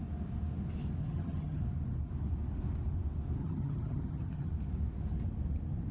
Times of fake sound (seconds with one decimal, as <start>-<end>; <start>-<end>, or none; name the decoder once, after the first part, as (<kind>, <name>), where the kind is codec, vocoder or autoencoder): 1.0-1.6 (vocoder, HiFi-GAN); 3.4-4.5